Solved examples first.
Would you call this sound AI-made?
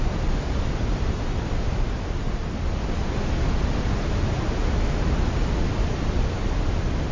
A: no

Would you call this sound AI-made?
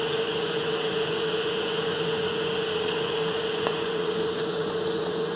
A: yes